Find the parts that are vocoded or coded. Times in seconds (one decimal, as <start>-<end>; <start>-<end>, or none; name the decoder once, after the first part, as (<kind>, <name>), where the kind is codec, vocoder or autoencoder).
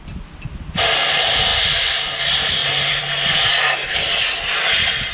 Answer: 1.5-2.2 (vocoder, BigVGAN v2); 2.6-3.6